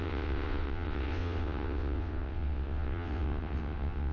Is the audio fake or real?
fake